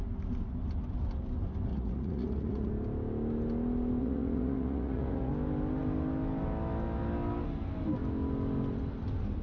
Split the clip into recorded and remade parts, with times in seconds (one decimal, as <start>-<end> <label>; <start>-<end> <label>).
0.0-1.7 recorded; 1.7-2.7 remade; 2.7-4.0 recorded; 4.0-5.3 remade; 5.3-9.4 recorded